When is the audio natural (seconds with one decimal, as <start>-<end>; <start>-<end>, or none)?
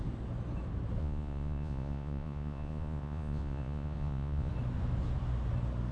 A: 0.0-1.0; 4.5-5.9